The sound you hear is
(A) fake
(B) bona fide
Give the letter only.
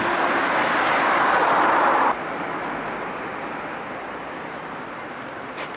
A